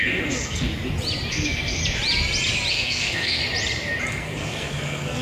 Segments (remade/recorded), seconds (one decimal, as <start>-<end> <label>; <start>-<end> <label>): 0.0-0.7 remade; 0.7-1.3 recorded; 1.3-1.8 remade; 1.8-2.7 recorded; 2.7-3.4 remade; 3.4-4.1 recorded; 4.1-5.2 remade